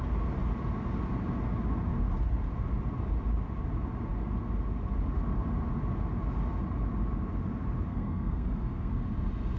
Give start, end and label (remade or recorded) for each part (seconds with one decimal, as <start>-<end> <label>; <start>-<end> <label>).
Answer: 0.0-7.9 recorded; 7.9-8.9 remade; 8.9-9.6 recorded